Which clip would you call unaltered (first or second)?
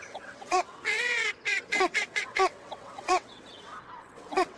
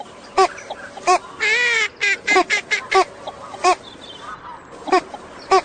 second